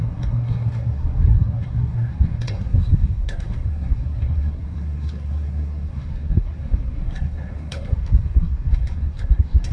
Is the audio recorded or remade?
remade